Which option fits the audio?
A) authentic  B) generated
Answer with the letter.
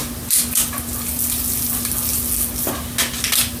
A